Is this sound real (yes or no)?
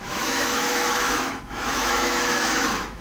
no